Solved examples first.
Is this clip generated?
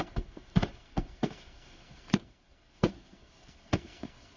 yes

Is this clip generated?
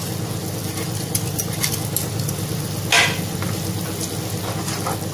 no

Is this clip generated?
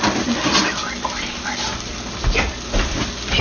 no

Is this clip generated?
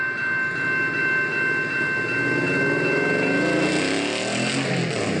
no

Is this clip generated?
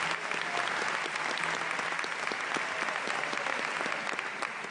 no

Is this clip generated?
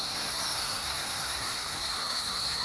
yes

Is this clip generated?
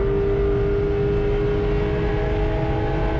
no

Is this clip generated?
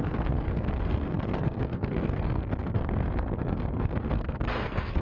yes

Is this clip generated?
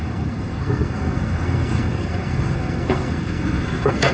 yes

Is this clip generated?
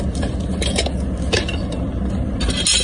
no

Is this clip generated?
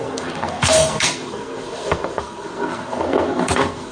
yes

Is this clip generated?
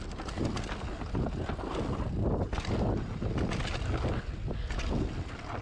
no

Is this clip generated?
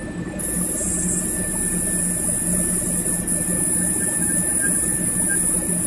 no